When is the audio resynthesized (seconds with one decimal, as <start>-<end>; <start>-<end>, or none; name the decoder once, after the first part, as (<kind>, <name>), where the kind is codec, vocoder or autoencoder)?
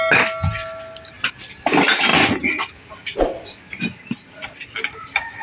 none